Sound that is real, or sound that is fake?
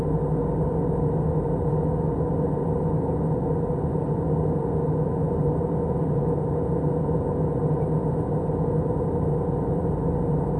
real